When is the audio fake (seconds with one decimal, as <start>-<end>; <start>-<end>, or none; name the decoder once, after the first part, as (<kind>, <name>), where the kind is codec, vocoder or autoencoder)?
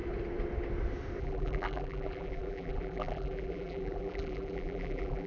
1.2-5.3 (vocoder, BigVGAN v2)